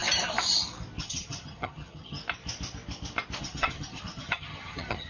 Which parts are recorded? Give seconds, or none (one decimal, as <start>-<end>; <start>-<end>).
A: 0.0-1.0; 2.2-3.4